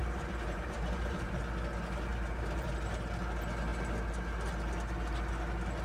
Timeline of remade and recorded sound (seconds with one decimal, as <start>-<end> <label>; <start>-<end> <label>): 0.0-1.4 remade; 1.4-2.1 recorded; 2.1-2.7 remade; 2.7-5.8 recorded